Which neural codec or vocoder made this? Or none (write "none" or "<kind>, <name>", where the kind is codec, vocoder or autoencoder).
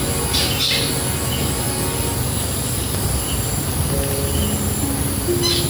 none